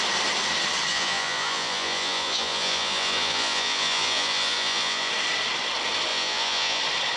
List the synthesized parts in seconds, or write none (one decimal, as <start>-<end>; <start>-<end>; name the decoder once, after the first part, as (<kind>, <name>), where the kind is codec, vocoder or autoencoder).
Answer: 0.9-5.1 (vocoder, Vocos); 6.1-6.8